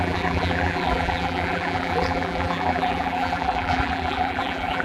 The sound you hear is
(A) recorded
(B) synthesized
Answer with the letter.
B